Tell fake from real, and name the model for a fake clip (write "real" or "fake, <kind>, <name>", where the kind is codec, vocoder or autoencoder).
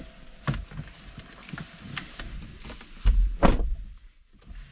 real